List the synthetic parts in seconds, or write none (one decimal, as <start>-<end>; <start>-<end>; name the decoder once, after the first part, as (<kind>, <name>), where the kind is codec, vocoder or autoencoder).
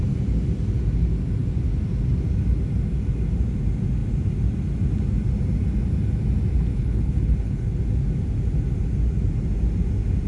6.7-7.8 (codec, HILCodec)